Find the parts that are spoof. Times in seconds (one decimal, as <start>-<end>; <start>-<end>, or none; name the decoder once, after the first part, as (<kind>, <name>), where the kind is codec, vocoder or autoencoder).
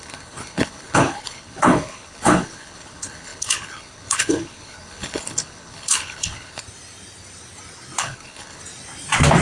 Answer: 0.0-6.6 (codec, HILCodec); 8.0-8.6